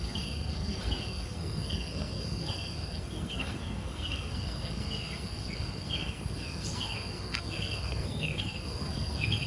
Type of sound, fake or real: fake